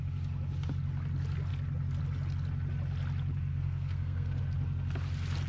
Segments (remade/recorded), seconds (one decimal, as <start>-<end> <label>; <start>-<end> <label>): 0.0-3.5 recorded; 3.5-4.4 remade; 4.4-5.5 recorded